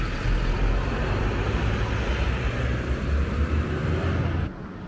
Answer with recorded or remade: recorded